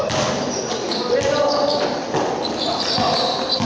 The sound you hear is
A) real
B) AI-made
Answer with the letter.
A